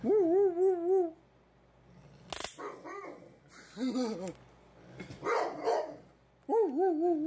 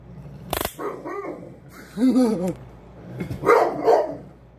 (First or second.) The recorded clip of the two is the first